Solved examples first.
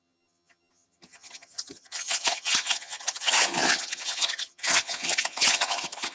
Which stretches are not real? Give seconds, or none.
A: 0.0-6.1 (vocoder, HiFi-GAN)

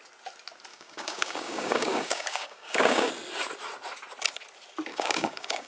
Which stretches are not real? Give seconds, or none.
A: 0.7-3.1 (codec, DAC); 4.9-5.7

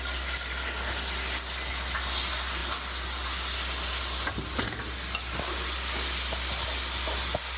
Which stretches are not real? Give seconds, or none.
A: none

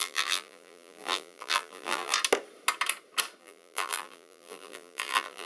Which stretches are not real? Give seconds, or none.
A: 0.0-2.1 (vocoder, BigVGAN v2); 3.4-5.5

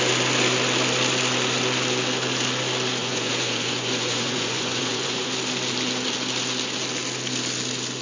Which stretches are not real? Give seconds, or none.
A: 3.0-5.3 (vocoder, Vocos)

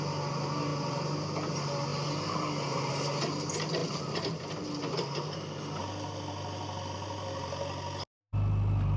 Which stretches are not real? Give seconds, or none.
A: none

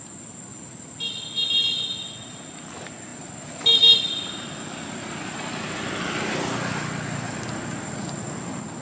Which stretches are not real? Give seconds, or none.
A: none